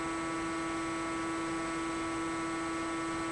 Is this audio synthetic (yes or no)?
no